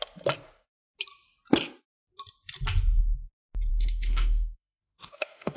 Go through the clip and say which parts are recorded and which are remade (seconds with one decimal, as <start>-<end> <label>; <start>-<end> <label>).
0.0-3.7 recorded; 3.7-5.6 remade